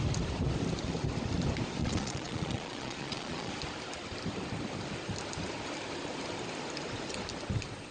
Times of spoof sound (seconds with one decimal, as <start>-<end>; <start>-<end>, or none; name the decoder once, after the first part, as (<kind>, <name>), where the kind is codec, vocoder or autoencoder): 1.8-3.5 (vocoder, Vocos)